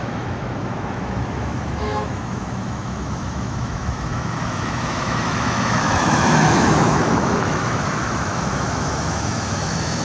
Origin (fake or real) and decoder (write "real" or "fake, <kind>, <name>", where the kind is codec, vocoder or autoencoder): fake, autoencoder, DAC-VAE